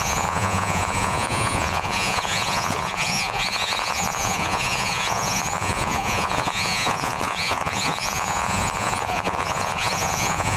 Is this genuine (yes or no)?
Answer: no